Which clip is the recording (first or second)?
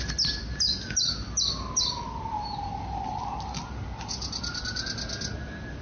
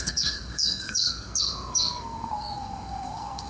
first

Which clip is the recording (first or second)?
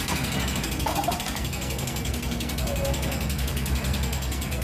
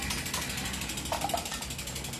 second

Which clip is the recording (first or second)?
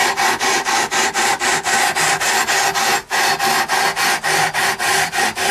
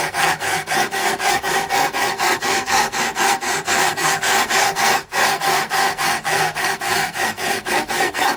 first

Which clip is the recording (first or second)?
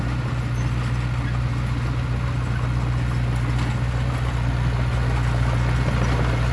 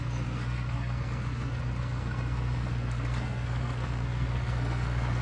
first